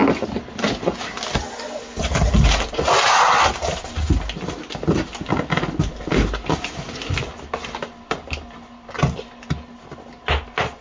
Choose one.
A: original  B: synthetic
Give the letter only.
A